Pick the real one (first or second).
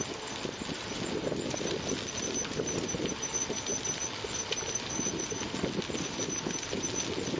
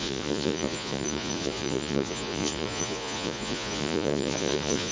first